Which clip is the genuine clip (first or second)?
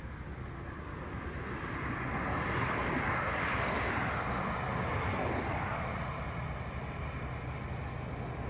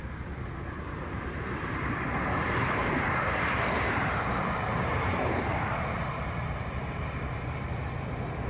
first